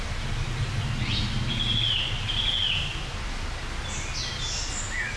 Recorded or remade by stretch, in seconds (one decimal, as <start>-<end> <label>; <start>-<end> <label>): 0.0-5.2 recorded